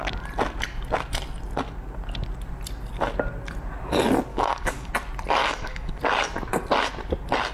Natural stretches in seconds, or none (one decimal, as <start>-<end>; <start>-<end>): 0.0-4.3; 4.9-5.4; 6.0-7.5